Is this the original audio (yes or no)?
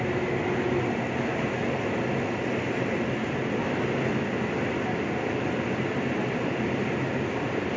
yes